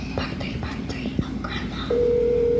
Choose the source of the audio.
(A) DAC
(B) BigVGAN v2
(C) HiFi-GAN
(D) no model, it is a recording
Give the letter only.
B